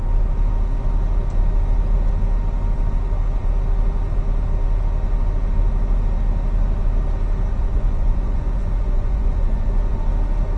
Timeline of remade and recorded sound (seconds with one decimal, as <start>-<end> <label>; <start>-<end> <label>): 0.0-7.5 recorded; 7.5-10.0 remade; 10.0-10.6 recorded